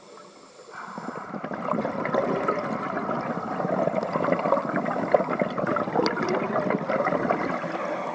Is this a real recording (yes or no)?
yes